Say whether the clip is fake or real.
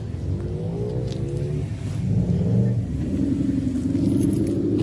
real